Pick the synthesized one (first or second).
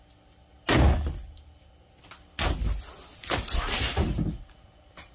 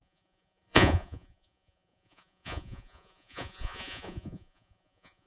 second